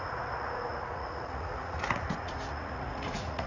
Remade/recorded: remade